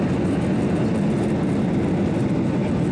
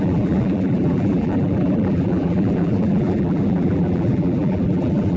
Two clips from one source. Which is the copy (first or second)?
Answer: second